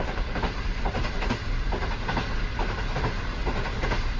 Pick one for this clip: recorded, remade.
recorded